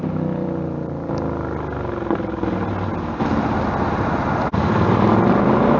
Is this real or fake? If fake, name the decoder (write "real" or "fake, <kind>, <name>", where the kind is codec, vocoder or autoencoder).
real